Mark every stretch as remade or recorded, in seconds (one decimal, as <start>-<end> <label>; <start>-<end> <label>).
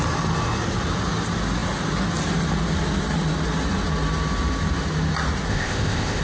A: 0.0-5.5 recorded; 5.5-6.2 remade